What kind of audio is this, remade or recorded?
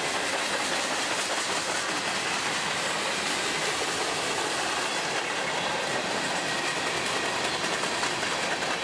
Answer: recorded